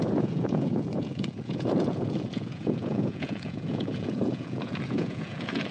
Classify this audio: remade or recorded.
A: remade